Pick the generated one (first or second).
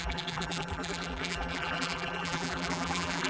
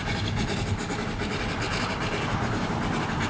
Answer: first